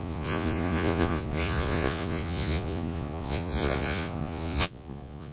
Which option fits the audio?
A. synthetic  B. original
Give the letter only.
A